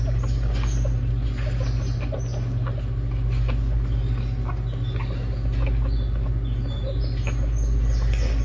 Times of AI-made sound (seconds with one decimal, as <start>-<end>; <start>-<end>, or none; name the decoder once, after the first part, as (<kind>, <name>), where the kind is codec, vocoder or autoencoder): none